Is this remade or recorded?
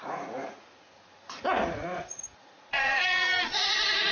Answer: remade